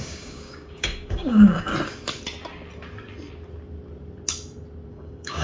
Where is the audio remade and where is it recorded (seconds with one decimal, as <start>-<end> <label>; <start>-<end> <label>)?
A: 0.0-1.7 remade; 1.7-4.9 recorded; 4.9-5.4 remade